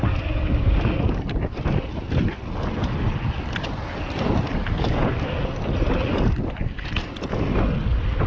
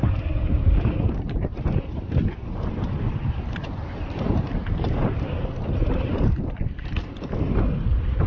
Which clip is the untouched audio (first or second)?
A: first